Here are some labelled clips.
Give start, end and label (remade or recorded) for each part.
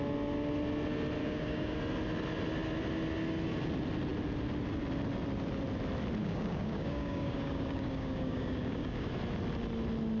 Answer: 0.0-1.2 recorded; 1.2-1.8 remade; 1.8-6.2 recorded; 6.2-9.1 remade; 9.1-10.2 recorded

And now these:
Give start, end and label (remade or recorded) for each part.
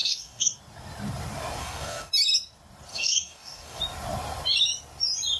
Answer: 0.0-0.6 remade; 0.6-1.6 recorded; 1.6-2.1 remade; 2.1-2.9 recorded; 2.9-3.8 remade; 3.8-5.4 recorded